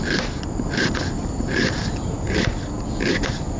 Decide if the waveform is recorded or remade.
recorded